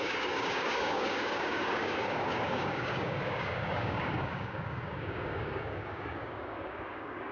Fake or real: fake